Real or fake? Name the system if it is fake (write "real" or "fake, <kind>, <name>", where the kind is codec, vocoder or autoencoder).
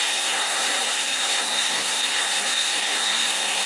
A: fake, codec, SNAC